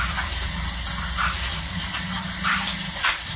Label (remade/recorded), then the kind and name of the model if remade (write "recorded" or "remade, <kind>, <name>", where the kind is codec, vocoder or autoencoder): recorded